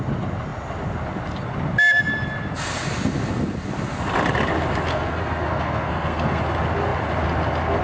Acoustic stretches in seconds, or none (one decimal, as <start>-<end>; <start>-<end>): 0.0-4.9; 6.4-7.8